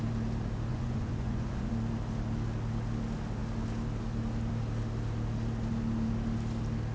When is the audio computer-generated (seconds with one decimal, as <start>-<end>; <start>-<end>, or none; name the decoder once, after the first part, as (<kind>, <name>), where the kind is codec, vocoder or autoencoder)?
0.7-1.7 (vocoder, Vocos)